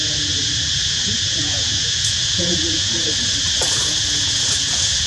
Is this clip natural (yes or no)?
no